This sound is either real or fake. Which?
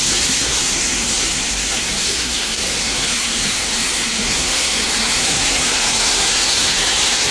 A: fake